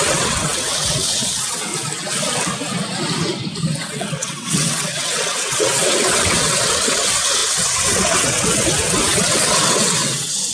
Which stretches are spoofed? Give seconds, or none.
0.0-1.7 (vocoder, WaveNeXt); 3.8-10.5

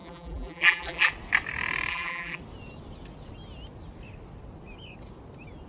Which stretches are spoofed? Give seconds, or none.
0.0-1.1 (vocoder, BigVGAN v2); 1.9-2.4

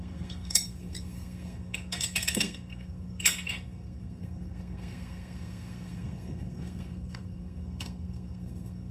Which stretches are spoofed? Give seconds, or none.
0.0-8.9 (codec, SNAC)

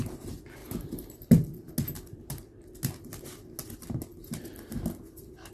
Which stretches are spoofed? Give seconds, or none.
none

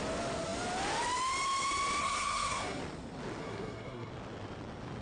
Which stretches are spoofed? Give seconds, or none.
2.0-2.8 (codec, SNAC); 3.4-4.1